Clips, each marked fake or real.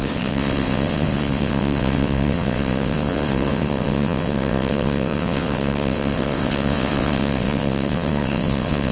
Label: fake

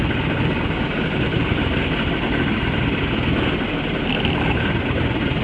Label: real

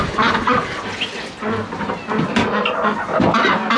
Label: real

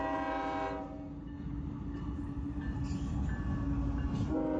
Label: real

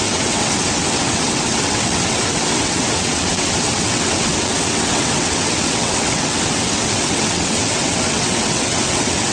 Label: fake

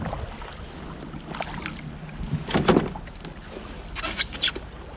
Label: real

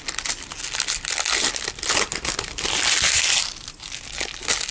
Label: real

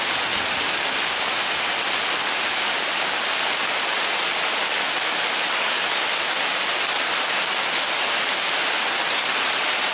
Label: real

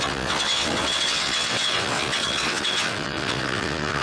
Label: fake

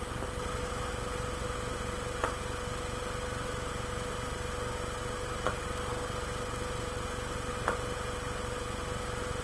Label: real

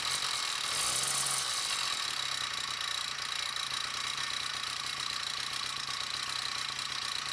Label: real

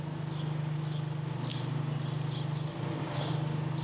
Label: real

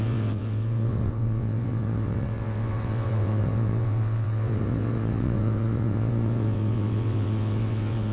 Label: fake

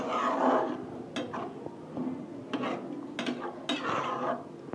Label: real